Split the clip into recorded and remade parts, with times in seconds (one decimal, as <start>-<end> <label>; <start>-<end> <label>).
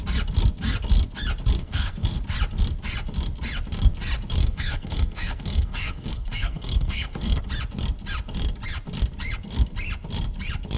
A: 0.0-1.6 recorded; 1.6-2.2 remade; 2.2-4.4 recorded; 4.4-7.4 remade; 7.4-10.8 recorded